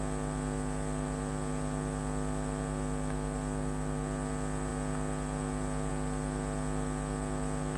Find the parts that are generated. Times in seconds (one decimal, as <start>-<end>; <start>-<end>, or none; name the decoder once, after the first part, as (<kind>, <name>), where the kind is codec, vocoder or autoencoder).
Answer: none

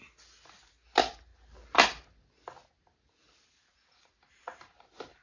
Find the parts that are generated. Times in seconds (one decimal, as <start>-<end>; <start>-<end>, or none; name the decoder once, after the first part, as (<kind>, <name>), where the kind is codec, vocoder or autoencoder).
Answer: none

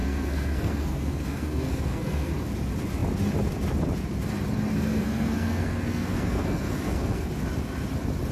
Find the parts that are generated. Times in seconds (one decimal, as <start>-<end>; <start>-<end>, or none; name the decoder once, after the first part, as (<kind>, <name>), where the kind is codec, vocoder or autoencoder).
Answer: 0.0-2.3 (codec, SNAC); 4.7-7.3

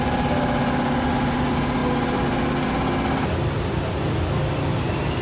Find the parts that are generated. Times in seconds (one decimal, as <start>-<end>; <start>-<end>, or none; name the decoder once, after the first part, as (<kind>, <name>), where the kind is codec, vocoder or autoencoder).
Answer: none

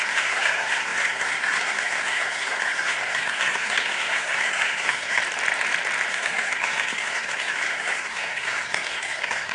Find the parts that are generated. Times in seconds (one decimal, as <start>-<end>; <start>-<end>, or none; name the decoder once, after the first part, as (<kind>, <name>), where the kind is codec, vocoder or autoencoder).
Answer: 0.0-5.2 (codec, SNAC); 6.1-9.5

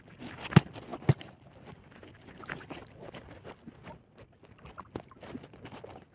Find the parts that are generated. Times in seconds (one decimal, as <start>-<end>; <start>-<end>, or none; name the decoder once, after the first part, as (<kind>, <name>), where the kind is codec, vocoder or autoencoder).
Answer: none

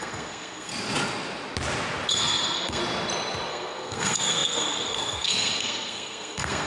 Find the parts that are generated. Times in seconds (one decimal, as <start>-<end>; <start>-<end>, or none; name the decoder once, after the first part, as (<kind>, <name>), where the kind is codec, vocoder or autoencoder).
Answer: 0.0-0.7 (codec, SNAC); 2.1-2.8; 3.5-6.7